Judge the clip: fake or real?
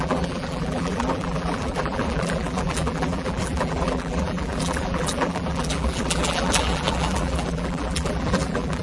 fake